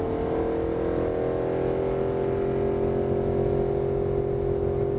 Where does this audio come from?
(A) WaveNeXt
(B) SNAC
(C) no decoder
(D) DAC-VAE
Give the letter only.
C